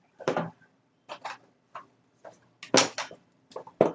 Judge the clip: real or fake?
real